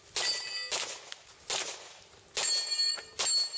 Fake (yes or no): no